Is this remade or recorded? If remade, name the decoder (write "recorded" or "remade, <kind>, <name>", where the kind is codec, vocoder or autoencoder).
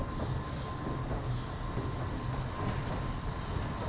recorded